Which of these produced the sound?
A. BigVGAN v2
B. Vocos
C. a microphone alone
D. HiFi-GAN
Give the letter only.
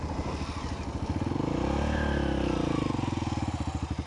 C